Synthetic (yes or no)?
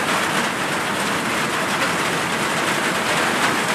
no